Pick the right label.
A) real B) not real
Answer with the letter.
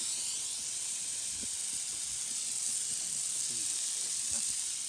A